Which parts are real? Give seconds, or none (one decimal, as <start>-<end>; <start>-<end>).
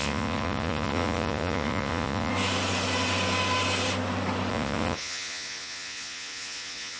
2.3-4.5